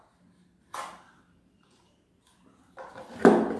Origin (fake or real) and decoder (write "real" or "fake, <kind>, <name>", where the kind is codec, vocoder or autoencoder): real